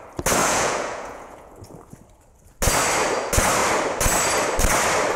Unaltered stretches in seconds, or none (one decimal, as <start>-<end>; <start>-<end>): 0.0-0.4; 1.7-5.2